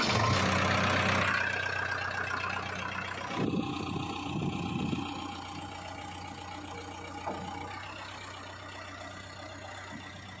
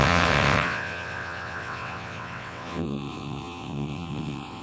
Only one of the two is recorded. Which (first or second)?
first